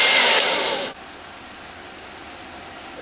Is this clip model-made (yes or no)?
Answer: no